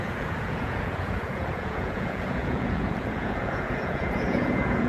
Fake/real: fake